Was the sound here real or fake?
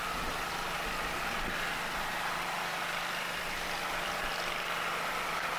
real